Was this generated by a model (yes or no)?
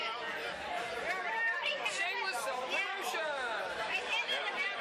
yes